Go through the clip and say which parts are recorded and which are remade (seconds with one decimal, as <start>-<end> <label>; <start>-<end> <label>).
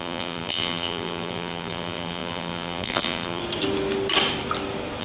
0.0-3.4 remade; 3.4-5.0 recorded